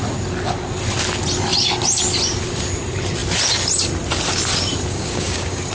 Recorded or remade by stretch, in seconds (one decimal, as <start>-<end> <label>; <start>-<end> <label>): 0.0-4.9 recorded; 4.9-5.7 remade